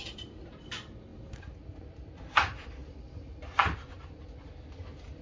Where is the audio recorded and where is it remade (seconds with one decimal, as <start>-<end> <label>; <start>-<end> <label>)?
0.0-1.1 remade; 1.1-1.8 recorded; 1.8-2.8 remade; 2.8-4.7 recorded; 4.7-5.2 remade